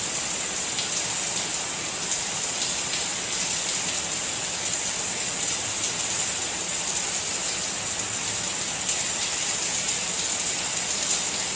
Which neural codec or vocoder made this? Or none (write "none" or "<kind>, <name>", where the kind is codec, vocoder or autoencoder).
none